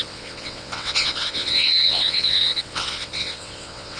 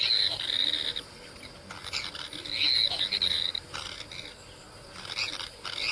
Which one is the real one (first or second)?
second